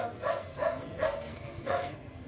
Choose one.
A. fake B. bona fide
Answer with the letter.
A